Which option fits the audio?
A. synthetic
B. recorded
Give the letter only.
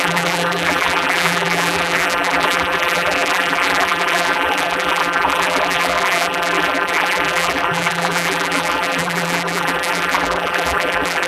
A